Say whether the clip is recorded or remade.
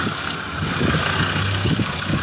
remade